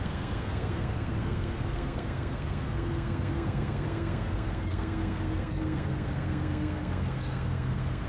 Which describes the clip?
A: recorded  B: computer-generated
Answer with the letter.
B